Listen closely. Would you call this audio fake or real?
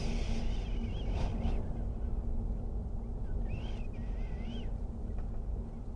real